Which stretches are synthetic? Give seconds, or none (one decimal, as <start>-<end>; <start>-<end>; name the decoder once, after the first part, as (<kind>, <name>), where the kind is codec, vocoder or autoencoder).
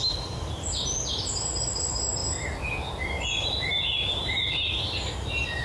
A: none